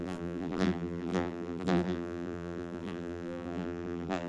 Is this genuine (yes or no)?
no